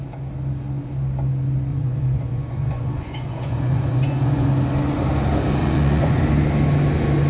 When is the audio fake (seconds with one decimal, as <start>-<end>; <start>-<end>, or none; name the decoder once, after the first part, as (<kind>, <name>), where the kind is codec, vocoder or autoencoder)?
1.7-4.5 (vocoder, Vocos); 5.6-6.2